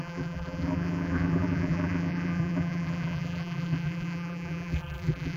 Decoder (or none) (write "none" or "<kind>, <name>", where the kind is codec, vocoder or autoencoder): vocoder, BigVGAN v2